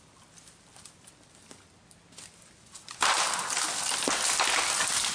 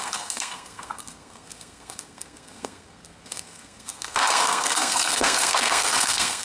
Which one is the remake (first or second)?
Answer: second